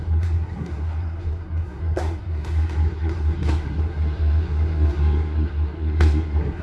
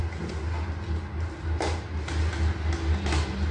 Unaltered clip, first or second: second